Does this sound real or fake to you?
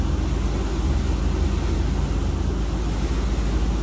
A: real